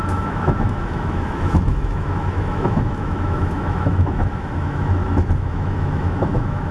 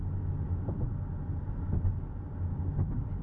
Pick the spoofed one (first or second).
first